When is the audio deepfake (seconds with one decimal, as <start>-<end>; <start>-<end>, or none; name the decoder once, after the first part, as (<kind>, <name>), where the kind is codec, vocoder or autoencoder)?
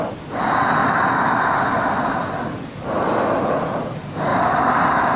4.3-4.8 (vocoder, BigVGAN v2)